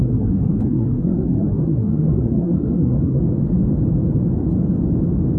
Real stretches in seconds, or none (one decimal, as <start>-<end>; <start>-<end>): 3.2-5.4